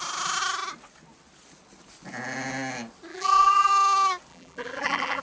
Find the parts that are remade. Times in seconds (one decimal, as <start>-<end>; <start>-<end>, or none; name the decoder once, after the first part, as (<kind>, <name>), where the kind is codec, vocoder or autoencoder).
3.1-3.7 (vocoder, BigVGAN v2); 4.3-5.2